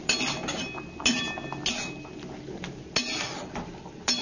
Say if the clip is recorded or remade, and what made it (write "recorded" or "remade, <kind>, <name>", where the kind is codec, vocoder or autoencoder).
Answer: recorded